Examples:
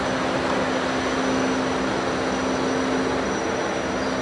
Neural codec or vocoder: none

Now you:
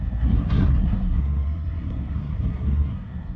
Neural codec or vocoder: codec, SNAC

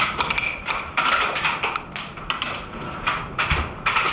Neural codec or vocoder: none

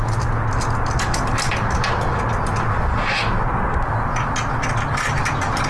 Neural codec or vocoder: none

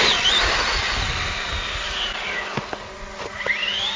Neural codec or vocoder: none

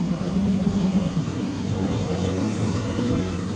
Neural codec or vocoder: codec, SNAC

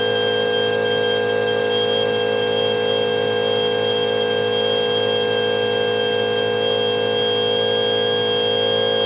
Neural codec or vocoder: none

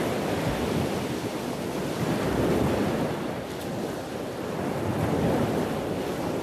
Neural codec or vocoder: none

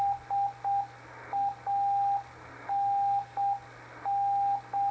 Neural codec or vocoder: none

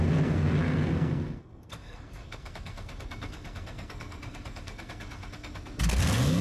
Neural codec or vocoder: codec, SNAC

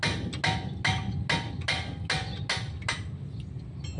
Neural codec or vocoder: none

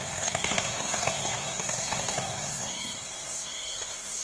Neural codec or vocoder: codec, SNAC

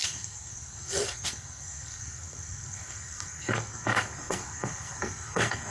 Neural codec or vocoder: codec, SNAC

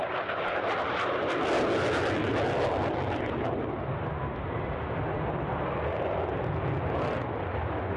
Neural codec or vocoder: none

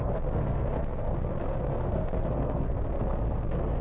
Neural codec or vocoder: codec, SNAC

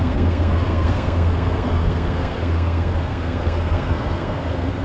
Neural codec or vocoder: codec, SNAC